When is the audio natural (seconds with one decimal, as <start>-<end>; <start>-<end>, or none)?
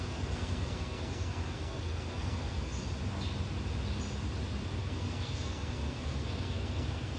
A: 2.7-4.8